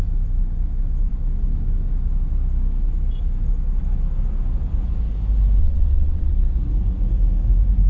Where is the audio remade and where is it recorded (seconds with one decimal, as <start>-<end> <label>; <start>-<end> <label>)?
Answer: 0.0-5.6 recorded; 5.6-6.4 remade; 6.4-7.9 recorded